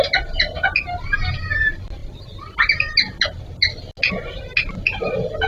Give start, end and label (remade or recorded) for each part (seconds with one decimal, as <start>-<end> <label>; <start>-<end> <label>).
0.0-5.5 recorded